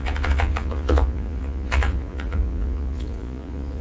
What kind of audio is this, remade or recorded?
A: remade